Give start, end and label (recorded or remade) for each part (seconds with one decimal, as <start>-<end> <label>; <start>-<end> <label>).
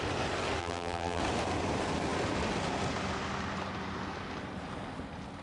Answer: 0.0-0.6 recorded; 0.6-1.2 remade; 1.2-5.4 recorded